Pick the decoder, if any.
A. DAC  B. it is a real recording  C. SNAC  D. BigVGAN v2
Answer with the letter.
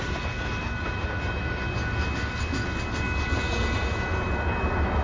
B